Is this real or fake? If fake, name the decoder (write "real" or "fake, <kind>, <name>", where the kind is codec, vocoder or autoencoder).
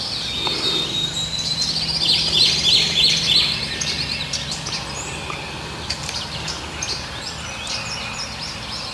real